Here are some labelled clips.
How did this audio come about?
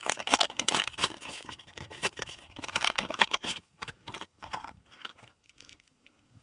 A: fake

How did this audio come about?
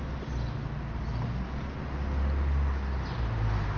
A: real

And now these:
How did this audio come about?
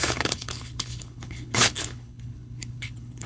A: fake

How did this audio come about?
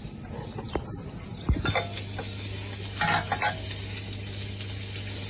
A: real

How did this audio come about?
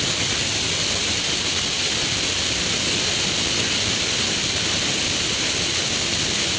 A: real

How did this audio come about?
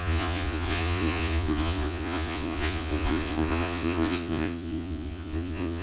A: fake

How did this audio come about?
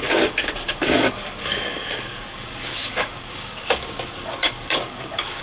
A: fake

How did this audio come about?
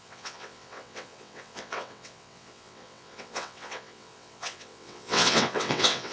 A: fake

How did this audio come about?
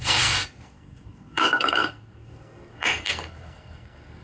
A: fake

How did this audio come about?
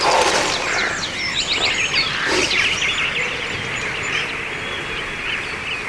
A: real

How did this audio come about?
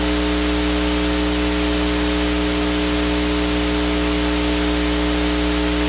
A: real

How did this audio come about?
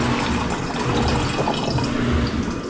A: real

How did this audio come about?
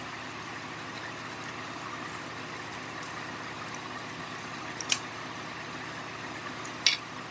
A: real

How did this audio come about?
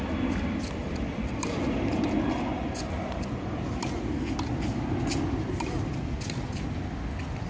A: real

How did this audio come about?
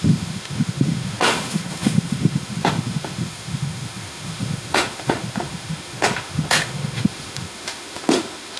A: fake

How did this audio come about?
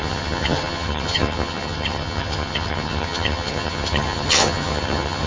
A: fake